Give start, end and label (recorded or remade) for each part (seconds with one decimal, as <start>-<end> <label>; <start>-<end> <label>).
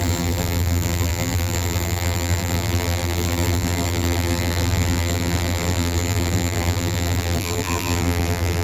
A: 0.0-8.6 remade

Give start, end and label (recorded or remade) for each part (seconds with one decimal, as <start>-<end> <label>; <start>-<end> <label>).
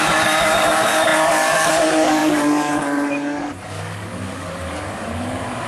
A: 0.0-5.7 remade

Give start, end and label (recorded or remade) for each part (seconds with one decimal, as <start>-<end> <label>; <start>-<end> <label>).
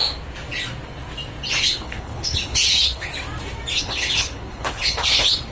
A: 0.0-1.6 recorded; 1.6-3.1 remade; 3.1-3.8 recorded; 3.8-5.5 remade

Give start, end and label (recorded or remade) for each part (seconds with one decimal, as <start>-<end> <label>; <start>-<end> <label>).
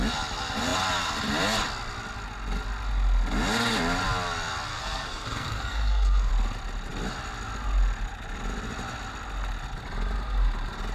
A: 0.0-4.7 recorded; 4.7-6.3 remade; 6.3-10.9 recorded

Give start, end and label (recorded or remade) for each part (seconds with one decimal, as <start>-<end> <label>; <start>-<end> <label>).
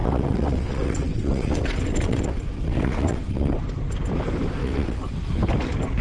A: 0.0-3.6 remade; 3.6-4.6 recorded; 4.6-5.1 remade; 5.1-6.0 recorded